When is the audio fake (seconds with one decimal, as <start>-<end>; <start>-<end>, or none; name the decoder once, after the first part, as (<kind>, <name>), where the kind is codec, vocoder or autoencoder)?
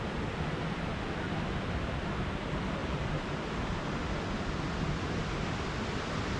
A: 2.8-3.3 (vocoder, BigVGAN v2)